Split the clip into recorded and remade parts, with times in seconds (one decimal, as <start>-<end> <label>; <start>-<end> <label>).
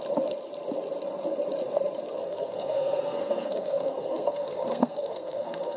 0.0-2.2 recorded; 2.2-5.8 remade